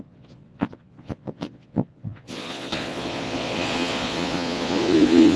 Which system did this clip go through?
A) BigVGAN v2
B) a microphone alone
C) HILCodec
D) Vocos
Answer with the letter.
D